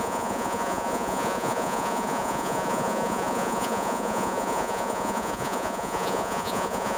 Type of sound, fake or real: fake